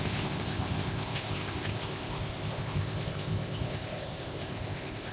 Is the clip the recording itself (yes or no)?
no